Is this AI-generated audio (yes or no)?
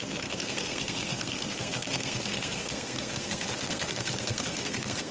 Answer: yes